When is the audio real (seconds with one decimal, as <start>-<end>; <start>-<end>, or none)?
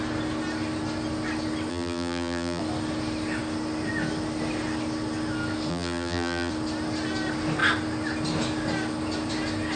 0.0-1.7; 2.6-5.7; 6.5-9.8